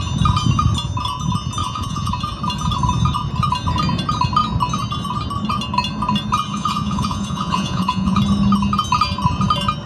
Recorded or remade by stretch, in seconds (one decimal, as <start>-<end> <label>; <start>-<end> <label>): 0.0-1.6 recorded; 1.6-2.1 remade; 2.1-6.5 recorded; 6.5-8.2 remade; 8.2-9.9 recorded